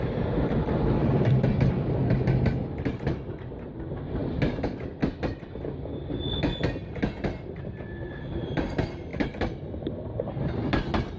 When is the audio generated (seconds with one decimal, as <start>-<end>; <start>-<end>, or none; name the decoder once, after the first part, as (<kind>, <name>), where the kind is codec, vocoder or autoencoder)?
0.0-4.2 (vocoder, BigVGAN v2); 8.2-11.2